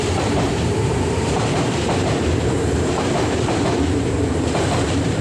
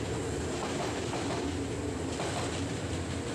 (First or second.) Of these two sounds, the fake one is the first